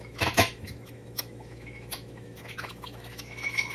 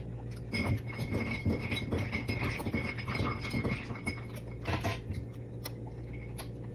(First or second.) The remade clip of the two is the first